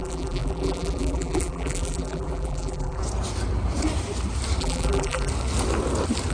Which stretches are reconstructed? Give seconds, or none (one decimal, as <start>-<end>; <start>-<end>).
0.0-3.0; 4.6-5.3